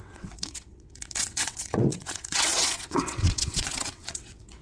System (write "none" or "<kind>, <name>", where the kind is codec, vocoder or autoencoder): vocoder, WaveNeXt